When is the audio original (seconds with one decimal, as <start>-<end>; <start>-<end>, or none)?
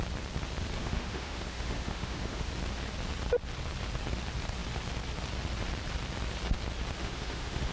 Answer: 0.0-0.8; 2.5-7.0